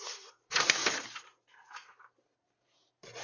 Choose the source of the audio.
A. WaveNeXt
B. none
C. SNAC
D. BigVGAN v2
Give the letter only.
D